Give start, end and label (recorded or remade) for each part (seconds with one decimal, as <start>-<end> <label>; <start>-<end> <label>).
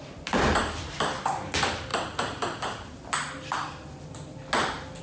0.0-5.0 recorded